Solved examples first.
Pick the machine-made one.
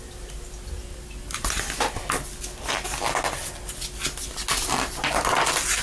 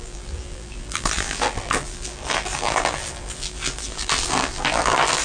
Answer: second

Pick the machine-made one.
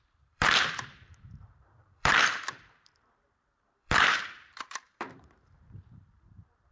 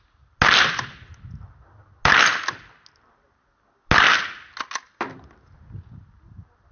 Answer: first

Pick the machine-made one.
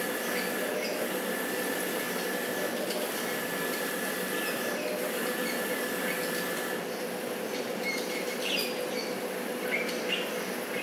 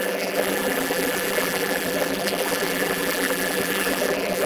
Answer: second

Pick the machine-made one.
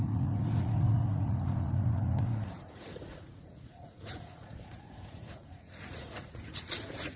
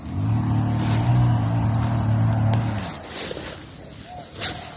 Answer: first